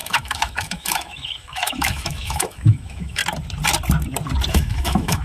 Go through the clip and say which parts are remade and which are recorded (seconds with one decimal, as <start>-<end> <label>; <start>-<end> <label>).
0.0-3.2 remade; 3.2-4.5 recorded; 4.5-5.2 remade

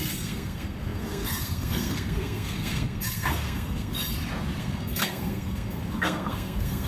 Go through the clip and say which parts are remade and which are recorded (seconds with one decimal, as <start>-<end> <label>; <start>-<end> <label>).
0.0-3.9 remade; 3.9-4.6 recorded; 4.6-6.9 remade